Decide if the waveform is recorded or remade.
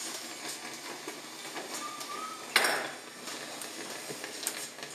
recorded